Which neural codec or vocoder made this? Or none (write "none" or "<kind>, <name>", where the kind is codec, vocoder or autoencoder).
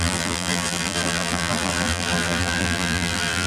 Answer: vocoder, BigVGAN v2